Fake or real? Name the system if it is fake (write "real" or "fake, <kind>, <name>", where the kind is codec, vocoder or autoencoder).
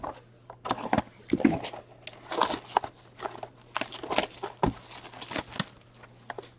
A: real